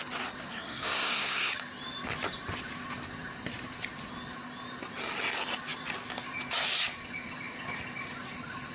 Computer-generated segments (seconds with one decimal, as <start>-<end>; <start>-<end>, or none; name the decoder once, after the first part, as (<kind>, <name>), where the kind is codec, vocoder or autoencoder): 0.5-1.5 (codec, SNAC)